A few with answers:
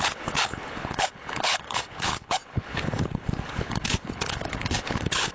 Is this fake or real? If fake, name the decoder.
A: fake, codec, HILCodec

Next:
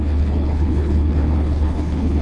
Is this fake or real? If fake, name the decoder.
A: fake, codec, HILCodec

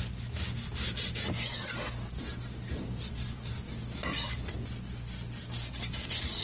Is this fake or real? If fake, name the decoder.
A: real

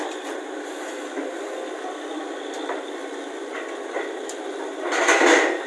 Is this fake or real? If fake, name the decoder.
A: real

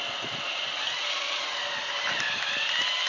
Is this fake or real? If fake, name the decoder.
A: real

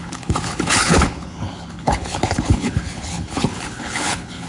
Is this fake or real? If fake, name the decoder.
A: fake, codec, HILCodec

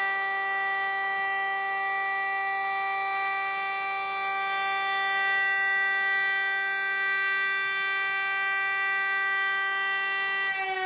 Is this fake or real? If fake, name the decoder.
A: real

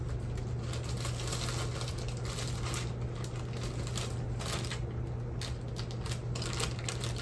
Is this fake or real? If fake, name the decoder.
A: real